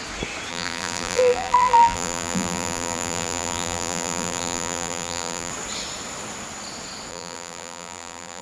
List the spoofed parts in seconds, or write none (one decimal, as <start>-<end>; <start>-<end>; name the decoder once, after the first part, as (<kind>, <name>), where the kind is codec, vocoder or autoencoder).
0.5-5.5 (vocoder, BigVGAN v2); 7.1-8.4